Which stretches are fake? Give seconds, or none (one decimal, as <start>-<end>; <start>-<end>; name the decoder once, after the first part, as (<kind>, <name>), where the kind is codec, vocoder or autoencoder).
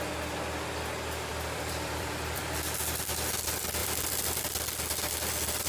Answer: 1.3-2.4 (vocoder, BigVGAN v2); 3.8-4.4